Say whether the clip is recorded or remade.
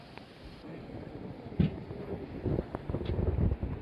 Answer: recorded